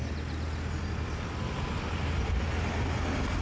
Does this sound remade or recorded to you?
recorded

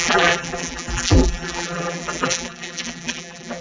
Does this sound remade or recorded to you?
remade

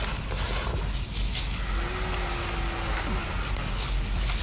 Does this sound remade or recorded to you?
recorded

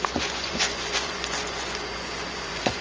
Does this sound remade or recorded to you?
remade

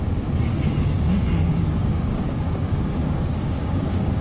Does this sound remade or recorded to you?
remade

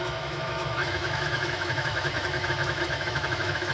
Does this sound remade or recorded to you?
remade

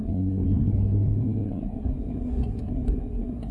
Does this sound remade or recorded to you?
remade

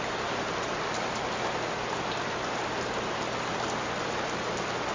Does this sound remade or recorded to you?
recorded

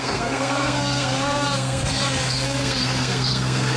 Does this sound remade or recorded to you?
remade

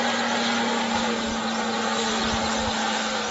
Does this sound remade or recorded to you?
recorded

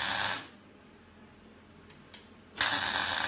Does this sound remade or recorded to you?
recorded